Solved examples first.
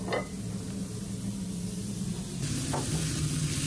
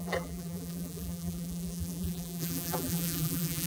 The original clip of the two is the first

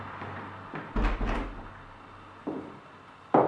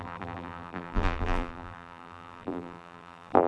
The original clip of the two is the first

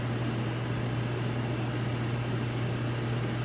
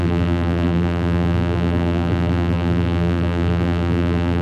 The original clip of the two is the first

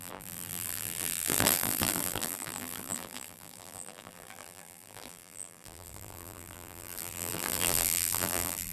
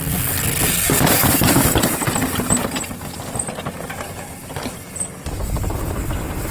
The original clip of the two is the second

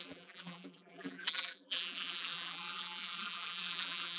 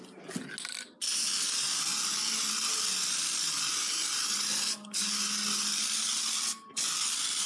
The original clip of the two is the second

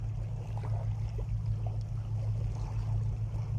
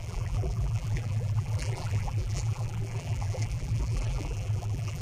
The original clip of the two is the first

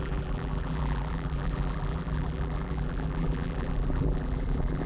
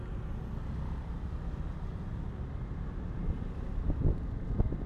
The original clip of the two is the second